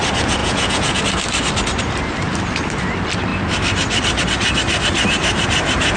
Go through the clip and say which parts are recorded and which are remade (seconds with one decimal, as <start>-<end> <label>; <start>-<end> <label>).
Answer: 0.0-0.4 recorded; 0.4-1.0 remade; 1.0-6.0 recorded